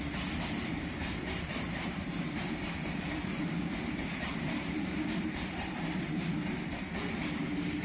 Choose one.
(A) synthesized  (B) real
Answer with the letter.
A